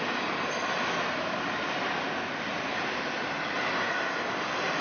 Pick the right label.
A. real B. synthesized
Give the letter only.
A